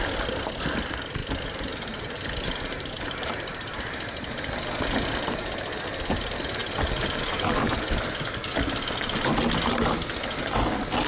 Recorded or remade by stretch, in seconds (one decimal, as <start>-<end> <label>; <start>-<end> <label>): 0.0-1.2 recorded; 1.2-4.5 remade; 4.5-11.1 recorded

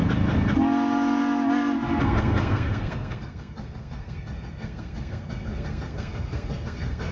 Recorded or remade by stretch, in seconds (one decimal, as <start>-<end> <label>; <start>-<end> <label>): 0.0-2.0 recorded; 2.0-7.1 remade

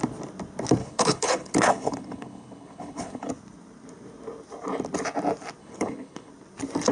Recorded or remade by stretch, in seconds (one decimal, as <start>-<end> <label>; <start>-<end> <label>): 0.0-0.8 recorded; 0.8-3.3 remade; 3.3-5.6 recorded; 5.6-6.3 remade; 6.3-6.9 recorded

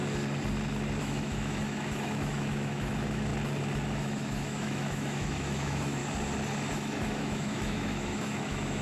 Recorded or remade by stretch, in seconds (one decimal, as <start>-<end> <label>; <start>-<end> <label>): 0.0-1.0 recorded; 1.0-3.3 remade; 3.3-4.0 recorded; 4.0-6.0 remade; 6.0-6.7 recorded; 6.7-8.8 remade

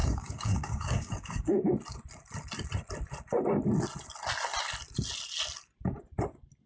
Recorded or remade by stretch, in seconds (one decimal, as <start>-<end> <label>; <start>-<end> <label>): 0.0-1.7 remade; 1.7-6.7 recorded

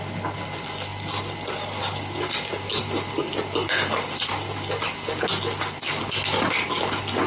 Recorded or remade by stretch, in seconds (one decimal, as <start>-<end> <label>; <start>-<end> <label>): 0.0-7.3 recorded